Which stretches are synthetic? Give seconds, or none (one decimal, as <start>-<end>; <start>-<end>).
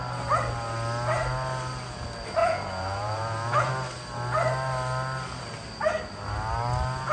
2.4-3.7